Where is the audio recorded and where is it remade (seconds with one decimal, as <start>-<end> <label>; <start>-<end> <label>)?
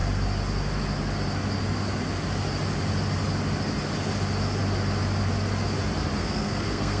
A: 0.0-6.2 recorded; 6.2-7.0 remade